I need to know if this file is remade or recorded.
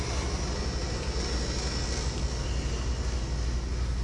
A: recorded